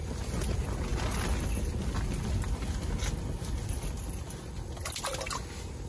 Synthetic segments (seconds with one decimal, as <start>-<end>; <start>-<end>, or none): none